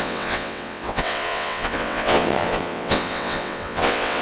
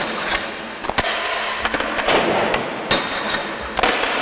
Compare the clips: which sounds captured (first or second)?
second